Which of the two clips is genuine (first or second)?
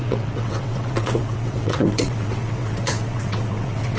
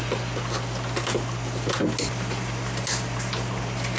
second